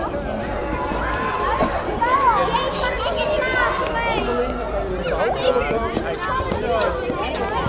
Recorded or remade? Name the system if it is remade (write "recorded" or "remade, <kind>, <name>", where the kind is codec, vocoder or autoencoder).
recorded